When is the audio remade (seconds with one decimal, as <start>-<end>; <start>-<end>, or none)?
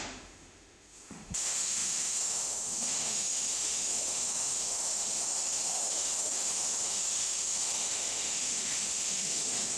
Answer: 0.0-9.8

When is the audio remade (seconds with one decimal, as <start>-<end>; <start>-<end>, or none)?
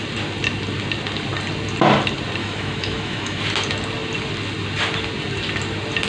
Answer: 2.4-3.4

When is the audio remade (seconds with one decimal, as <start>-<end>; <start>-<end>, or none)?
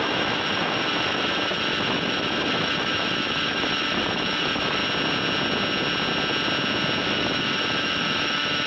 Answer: 0.0-4.8; 7.0-8.7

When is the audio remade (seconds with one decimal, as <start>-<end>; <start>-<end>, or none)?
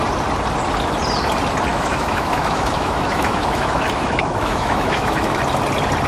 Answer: 1.7-5.4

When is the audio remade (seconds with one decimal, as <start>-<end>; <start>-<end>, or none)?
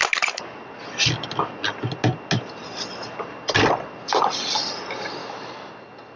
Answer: 5.2-5.7